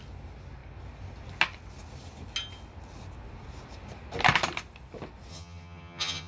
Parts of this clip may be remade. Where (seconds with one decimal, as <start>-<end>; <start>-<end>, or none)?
5.3-6.3